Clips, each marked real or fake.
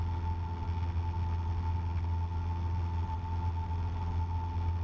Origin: real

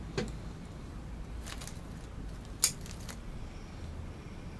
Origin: real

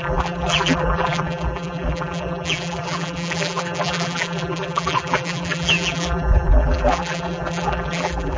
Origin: fake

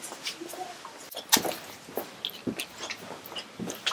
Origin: real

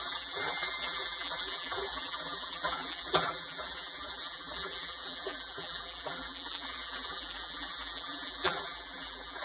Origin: fake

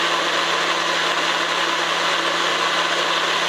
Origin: real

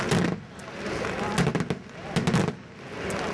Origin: real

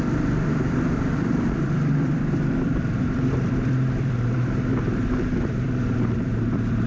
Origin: fake